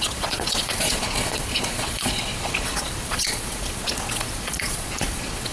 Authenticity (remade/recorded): remade